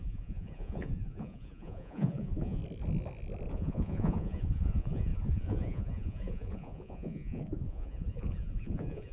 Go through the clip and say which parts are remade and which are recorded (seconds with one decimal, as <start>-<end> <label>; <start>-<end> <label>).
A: 0.0-2.6 remade; 2.6-3.5 recorded; 3.5-9.1 remade